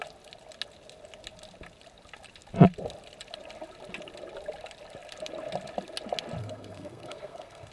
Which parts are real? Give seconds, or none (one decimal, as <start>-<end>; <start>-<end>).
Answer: 0.0-6.4